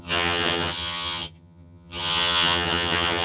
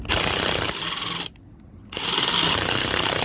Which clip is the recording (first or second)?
second